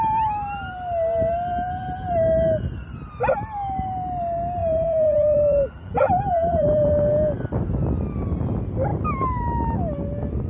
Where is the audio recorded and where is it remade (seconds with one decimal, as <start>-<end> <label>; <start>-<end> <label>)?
0.0-4.6 recorded; 4.6-6.9 remade; 6.9-10.5 recorded